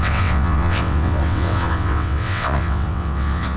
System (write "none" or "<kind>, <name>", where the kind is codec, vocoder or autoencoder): vocoder, WaveNeXt